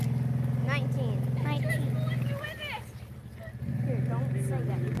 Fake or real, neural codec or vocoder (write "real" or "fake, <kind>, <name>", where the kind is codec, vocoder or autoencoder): real